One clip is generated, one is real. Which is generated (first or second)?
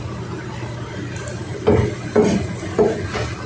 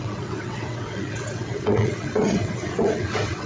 second